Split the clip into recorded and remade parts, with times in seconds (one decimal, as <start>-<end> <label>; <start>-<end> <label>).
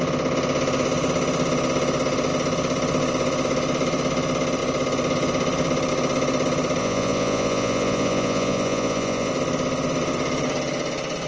0.0-6.8 recorded; 6.8-9.3 remade; 9.3-11.3 recorded